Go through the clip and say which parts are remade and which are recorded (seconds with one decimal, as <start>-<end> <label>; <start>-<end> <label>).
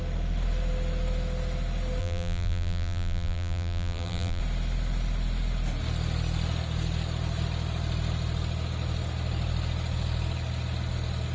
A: 0.0-2.0 recorded; 2.0-4.4 remade; 4.4-11.3 recorded